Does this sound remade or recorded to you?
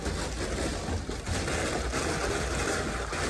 recorded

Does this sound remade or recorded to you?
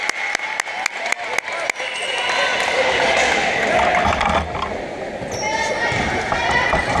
recorded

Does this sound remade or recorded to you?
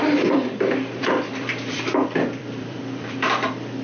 remade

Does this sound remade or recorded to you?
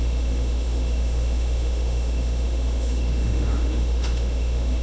remade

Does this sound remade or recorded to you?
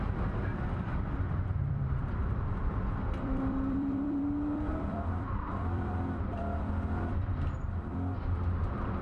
remade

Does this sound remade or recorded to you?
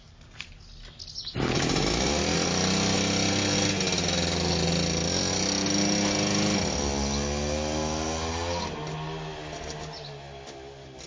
recorded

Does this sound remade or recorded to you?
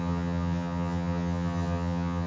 remade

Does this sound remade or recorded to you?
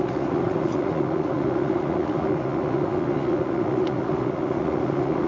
remade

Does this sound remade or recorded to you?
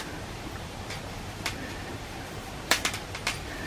remade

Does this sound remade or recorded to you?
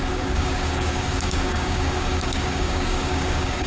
remade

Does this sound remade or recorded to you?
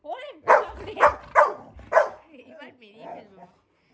recorded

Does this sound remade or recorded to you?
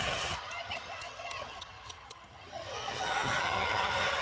remade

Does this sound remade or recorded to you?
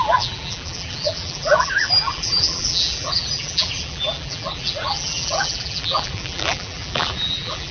remade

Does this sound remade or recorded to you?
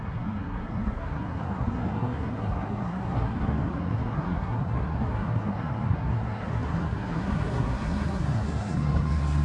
remade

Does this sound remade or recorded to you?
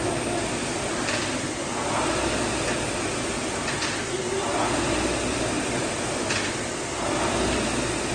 recorded